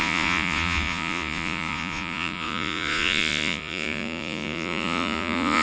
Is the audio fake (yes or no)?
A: yes